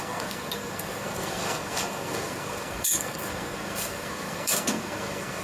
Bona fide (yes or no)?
no